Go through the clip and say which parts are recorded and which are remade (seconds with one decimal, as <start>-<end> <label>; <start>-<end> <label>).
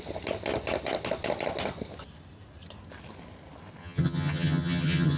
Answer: 0.0-3.8 recorded; 3.8-5.2 remade